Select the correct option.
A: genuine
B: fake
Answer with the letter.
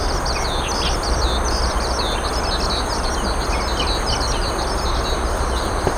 A